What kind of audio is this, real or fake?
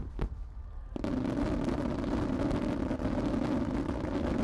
real